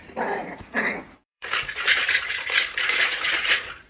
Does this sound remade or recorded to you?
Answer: remade